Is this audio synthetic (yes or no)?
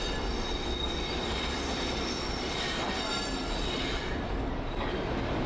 no